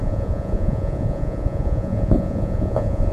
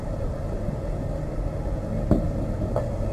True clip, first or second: second